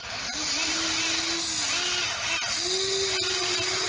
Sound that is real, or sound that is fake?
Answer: real